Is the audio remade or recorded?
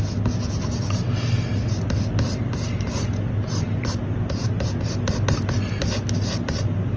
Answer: recorded